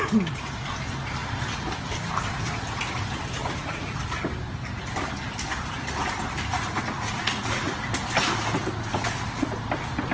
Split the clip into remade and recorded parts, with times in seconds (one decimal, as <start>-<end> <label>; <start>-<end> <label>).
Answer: 0.0-3.4 recorded; 3.4-4.0 remade; 4.0-6.5 recorded; 6.5-7.8 remade; 7.8-8.9 recorded; 8.9-9.6 remade; 9.6-10.1 recorded